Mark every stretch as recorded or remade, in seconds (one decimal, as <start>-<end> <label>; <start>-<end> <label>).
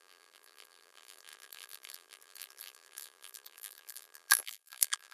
0.0-5.1 remade